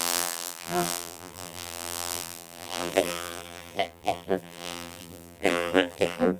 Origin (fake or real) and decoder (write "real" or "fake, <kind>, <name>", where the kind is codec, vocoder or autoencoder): fake, vocoder, BigVGAN v2